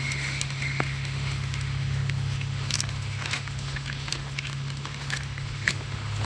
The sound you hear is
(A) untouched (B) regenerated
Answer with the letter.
B